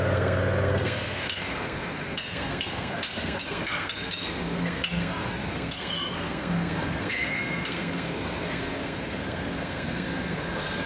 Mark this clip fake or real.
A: fake